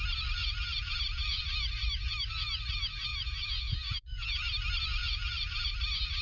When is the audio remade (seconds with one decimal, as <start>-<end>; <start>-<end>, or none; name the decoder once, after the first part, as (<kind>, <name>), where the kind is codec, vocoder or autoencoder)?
0.4-1.4 (vocoder, Vocos); 3.1-4.4; 5.0-5.7